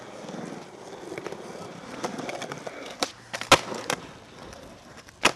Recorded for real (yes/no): yes